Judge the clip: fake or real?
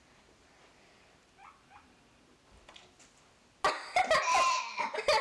real